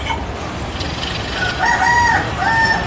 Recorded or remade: recorded